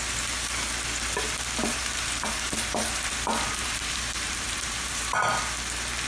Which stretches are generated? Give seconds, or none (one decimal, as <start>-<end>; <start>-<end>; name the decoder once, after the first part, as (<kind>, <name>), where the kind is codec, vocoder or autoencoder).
1.7-5.4 (vocoder, BigVGAN v2)